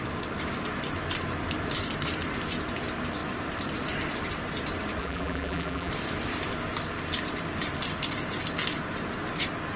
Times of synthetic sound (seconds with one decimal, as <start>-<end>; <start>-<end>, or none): 5.0-5.9